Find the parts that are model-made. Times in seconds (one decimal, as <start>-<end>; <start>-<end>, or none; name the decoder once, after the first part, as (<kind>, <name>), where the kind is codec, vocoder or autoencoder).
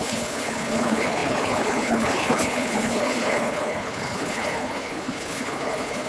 0.0-6.1 (codec, HILCodec)